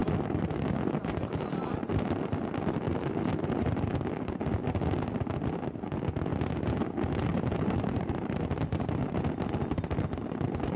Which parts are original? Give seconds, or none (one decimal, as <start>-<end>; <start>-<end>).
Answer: 0.0-7.3; 8.4-10.8